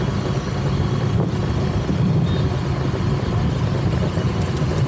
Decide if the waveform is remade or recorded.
recorded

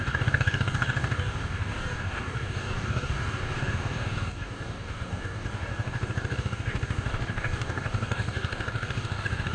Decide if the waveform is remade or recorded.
remade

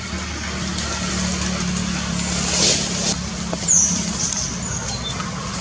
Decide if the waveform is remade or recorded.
recorded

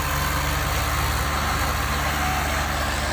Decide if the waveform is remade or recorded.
recorded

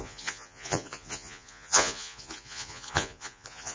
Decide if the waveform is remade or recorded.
remade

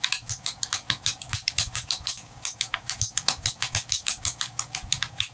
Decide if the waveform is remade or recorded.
remade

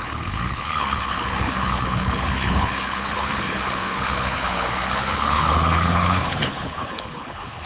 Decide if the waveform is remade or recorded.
remade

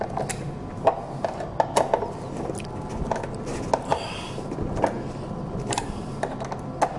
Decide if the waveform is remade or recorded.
recorded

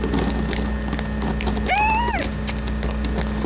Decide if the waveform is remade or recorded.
recorded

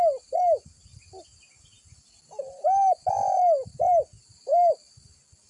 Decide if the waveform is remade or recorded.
recorded